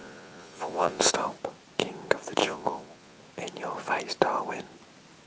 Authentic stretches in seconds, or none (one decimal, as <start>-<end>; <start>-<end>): 1.1-2.4; 3.2-5.3